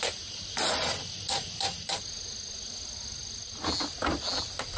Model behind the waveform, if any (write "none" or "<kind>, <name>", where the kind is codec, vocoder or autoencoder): none